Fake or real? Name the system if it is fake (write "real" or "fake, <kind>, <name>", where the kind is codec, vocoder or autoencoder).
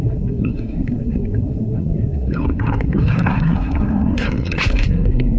fake, codec, SNAC